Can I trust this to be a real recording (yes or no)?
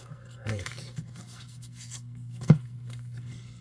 no